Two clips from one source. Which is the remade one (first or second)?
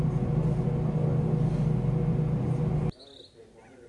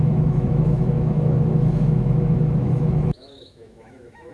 second